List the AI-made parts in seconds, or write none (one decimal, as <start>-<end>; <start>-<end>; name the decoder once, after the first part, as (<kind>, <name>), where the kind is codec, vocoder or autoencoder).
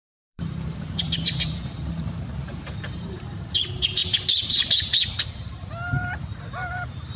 0.0-7.2 (vocoder, BigVGAN v2)